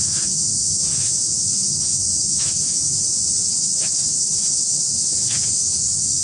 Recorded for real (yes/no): no